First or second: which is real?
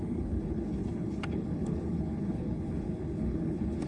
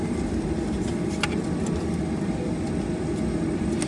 second